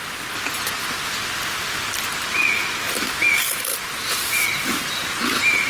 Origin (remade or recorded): recorded